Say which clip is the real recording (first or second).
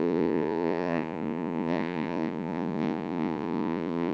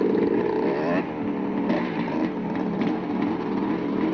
second